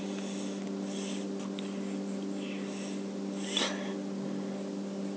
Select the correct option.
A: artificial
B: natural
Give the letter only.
B